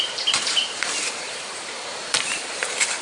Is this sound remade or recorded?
remade